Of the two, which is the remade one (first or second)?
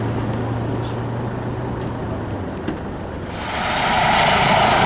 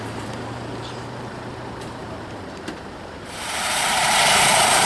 second